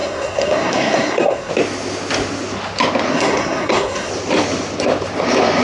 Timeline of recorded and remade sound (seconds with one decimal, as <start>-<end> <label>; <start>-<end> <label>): 0.0-1.5 remade; 1.5-3.1 recorded; 3.1-4.1 remade; 4.1-5.6 recorded